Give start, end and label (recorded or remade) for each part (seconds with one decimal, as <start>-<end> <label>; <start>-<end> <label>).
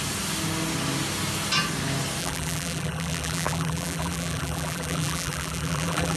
0.0-2.2 recorded; 2.2-6.2 remade